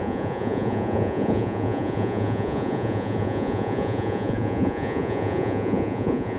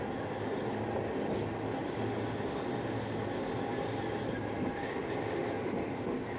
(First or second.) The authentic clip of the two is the second